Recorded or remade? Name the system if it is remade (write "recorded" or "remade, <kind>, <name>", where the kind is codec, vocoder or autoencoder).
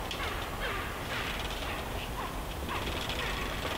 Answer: recorded